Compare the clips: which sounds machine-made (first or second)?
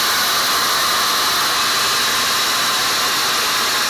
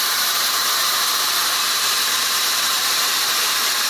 second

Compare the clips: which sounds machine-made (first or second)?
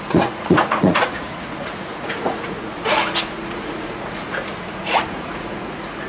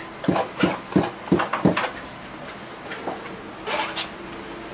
first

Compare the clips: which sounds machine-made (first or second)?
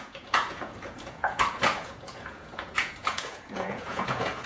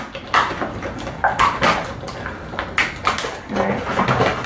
first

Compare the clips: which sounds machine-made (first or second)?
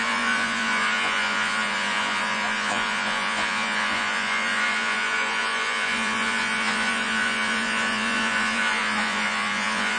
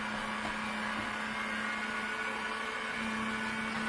first